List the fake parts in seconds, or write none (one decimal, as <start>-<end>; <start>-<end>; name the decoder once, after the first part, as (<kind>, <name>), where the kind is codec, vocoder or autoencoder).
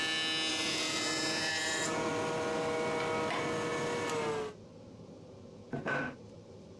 0.5-2.1 (vocoder, Vocos)